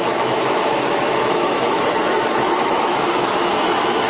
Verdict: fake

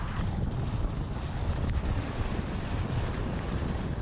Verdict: real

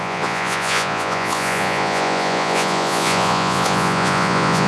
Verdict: fake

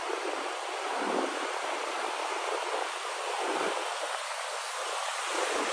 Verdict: real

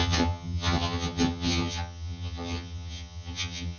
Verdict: fake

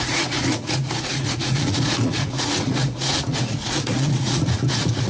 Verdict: fake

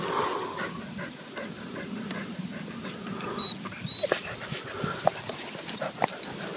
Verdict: real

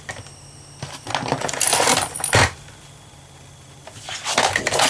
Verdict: real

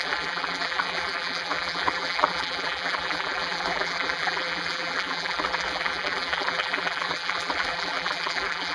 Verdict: fake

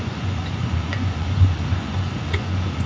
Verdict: fake